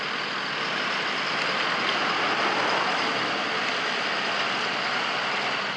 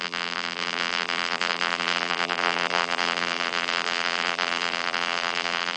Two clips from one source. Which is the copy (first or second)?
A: second